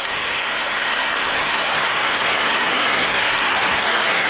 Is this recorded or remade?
remade